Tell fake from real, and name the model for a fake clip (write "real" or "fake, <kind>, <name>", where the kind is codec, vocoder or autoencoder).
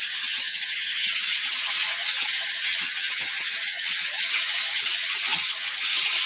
fake, vocoder, HiFi-GAN